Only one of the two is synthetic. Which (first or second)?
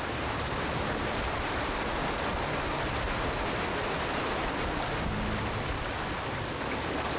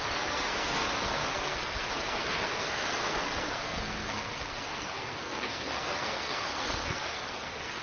second